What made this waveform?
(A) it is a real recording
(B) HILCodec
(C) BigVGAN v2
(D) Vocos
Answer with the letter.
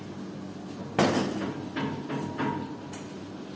A